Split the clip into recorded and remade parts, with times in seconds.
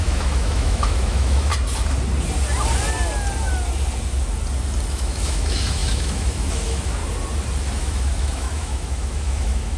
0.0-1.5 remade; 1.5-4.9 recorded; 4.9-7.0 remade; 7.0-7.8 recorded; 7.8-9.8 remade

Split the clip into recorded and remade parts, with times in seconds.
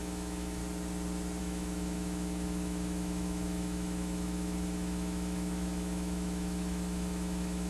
0.0-0.6 remade; 0.6-1.4 recorded; 1.4-7.7 remade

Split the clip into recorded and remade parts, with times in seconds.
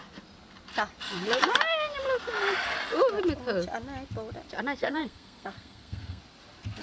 0.0-4.8 recorded; 4.8-6.2 remade; 6.2-6.8 recorded